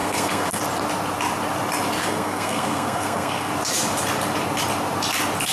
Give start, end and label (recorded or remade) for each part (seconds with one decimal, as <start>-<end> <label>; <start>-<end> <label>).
0.0-0.6 remade; 0.6-2.0 recorded; 2.0-3.5 remade; 3.5-5.5 recorded